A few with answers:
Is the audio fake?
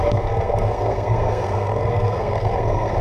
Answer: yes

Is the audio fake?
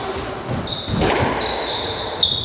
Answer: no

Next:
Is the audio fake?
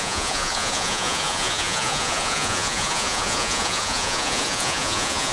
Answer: yes